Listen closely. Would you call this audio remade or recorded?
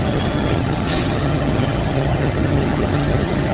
remade